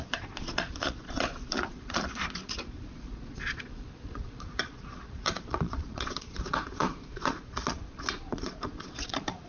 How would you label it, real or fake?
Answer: fake